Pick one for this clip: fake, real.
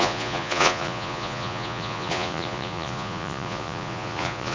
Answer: fake